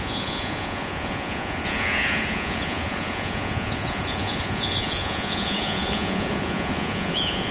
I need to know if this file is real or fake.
fake